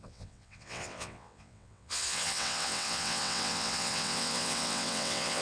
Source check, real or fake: fake